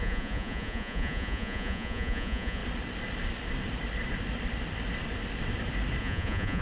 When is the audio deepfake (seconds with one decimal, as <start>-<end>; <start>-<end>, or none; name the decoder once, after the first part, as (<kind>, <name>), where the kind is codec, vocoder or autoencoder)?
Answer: 0.0-2.6 (vocoder, Vocos); 6.0-6.6